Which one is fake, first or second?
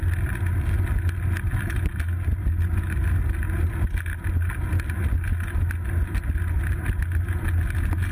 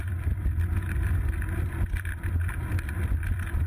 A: second